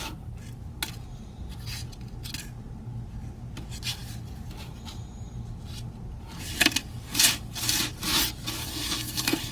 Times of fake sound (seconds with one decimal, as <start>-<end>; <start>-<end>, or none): 8.6-9.5